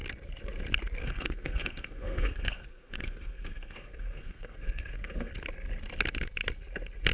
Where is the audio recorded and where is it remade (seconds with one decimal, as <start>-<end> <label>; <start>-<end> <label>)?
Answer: 0.0-1.0 recorded; 1.0-5.3 remade; 5.3-7.1 recorded

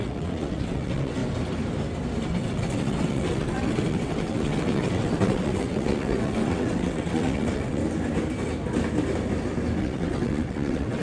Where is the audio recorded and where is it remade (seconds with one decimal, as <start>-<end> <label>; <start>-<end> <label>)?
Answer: 0.0-1.2 remade; 1.2-2.3 recorded; 2.3-7.8 remade; 7.8-9.8 recorded; 9.8-11.0 remade

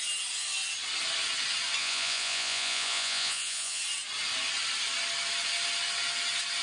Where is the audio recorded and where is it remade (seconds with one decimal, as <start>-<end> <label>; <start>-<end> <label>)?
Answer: 0.0-1.8 recorded; 1.8-3.8 remade; 3.8-6.6 recorded

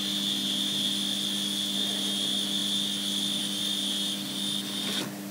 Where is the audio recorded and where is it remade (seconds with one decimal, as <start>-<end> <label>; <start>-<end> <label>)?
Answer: 0.0-5.3 recorded